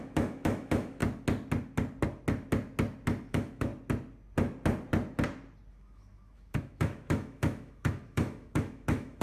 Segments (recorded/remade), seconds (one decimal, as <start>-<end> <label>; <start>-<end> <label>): 0.0-1.0 remade; 1.0-3.3 recorded; 3.3-3.7 remade; 3.7-5.7 recorded; 5.7-9.2 remade